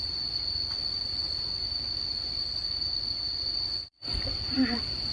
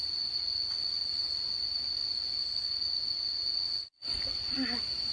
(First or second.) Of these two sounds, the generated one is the first